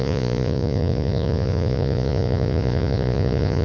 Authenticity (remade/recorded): remade